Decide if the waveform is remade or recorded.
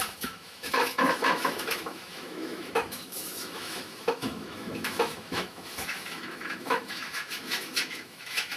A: remade